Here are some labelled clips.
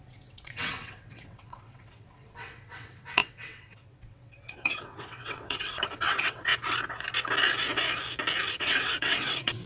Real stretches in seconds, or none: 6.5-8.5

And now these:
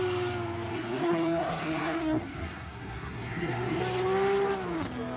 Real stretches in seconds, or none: 0.0-0.7; 3.8-5.2

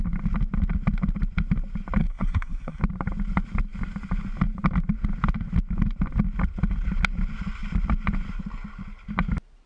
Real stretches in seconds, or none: 0.0-2.0; 2.8-9.7

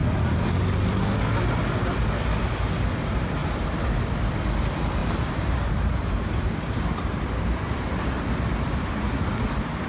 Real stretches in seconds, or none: 0.0-3.4; 4.1-5.0; 8.9-9.9